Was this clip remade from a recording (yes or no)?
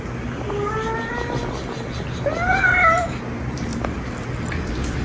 no